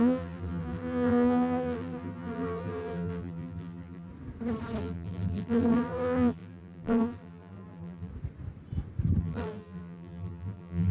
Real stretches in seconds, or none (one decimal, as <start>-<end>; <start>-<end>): 4.1-4.8; 8.1-9.2